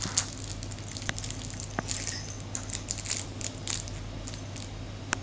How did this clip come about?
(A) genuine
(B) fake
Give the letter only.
A